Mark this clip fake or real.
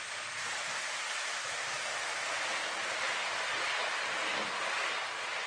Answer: real